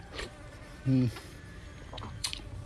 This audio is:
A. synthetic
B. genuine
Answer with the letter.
A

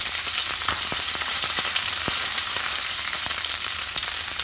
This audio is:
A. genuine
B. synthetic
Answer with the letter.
B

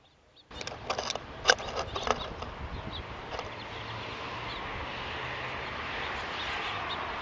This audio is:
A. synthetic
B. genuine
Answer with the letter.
B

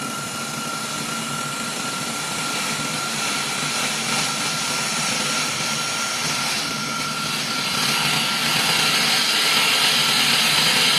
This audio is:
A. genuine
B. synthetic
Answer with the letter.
A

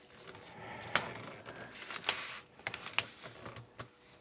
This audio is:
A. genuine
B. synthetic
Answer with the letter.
A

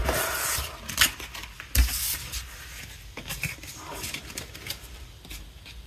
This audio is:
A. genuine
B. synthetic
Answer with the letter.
A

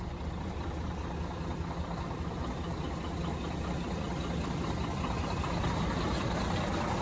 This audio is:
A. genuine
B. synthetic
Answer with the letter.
A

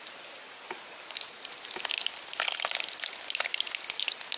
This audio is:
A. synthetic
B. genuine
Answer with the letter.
B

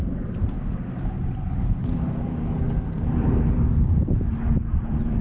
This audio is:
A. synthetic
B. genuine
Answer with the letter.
A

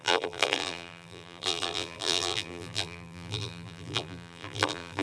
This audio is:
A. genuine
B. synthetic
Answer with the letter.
B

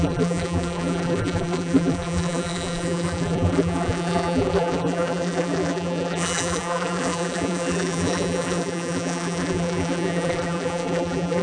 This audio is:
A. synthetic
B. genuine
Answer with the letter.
A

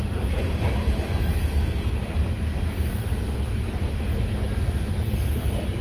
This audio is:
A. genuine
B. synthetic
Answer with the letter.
A